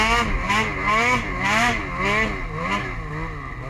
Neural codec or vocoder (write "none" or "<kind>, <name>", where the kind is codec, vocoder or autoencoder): none